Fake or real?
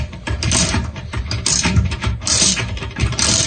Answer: fake